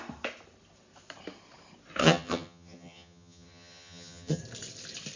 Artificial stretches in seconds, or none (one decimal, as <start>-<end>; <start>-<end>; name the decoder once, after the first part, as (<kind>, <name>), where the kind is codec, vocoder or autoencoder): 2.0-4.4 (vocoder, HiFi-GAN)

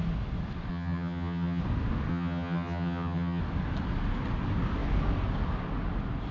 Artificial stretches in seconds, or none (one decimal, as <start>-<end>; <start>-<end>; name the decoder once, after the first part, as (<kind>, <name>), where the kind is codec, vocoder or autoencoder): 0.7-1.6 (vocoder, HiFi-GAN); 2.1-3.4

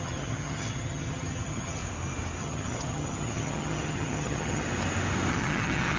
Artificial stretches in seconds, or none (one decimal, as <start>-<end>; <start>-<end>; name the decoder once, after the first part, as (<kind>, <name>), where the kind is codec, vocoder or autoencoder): 0.0-1.8 (vocoder, HiFi-GAN); 2.4-4.6; 5.3-6.0

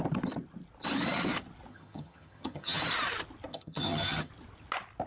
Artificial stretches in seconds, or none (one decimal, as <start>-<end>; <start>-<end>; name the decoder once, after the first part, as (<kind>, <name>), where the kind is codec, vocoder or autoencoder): 1.7-2.8 (vocoder, HiFi-GAN); 3.5-4.3